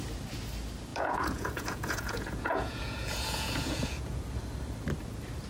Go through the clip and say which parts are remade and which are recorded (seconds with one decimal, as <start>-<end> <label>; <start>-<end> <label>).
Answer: 0.0-0.9 recorded; 0.9-4.2 remade; 4.2-5.5 recorded